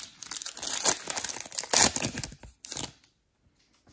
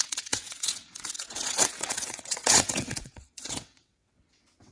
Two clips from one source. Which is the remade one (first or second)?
second